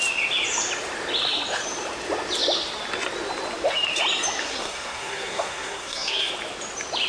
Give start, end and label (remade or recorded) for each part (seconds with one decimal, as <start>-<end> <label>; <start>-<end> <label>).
0.0-4.4 recorded; 4.4-6.3 remade; 6.3-7.1 recorded